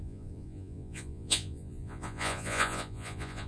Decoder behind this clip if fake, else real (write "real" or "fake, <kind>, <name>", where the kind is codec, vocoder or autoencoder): fake, vocoder, Vocos